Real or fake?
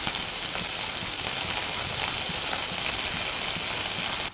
real